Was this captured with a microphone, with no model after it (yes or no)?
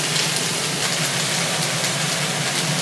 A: yes